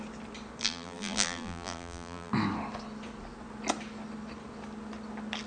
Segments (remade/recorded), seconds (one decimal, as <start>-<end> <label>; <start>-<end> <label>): 0.0-0.6 recorded; 0.6-2.3 remade; 2.3-5.5 recorded